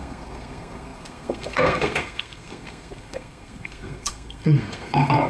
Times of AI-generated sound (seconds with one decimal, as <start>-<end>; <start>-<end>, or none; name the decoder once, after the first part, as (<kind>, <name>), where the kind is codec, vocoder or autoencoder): 0.0-5.3 (codec, SNAC)